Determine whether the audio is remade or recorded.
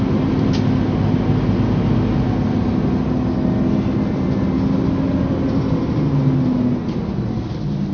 recorded